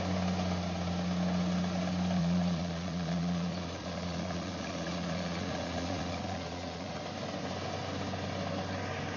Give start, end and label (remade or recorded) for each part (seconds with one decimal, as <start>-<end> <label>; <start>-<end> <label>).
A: 0.0-2.2 recorded; 2.2-7.0 remade; 7.0-9.2 recorded